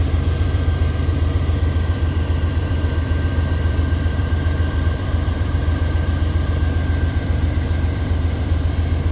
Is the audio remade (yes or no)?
yes